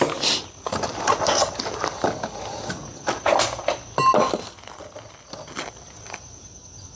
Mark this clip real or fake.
real